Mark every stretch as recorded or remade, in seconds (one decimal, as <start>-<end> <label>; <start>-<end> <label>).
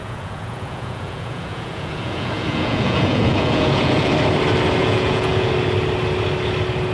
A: 0.0-4.1 remade; 4.1-4.8 recorded; 4.8-5.5 remade; 5.5-6.9 recorded